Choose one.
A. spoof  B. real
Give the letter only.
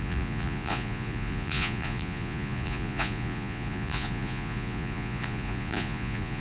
A